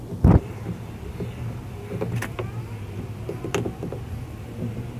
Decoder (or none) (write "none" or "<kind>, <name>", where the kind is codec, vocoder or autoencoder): none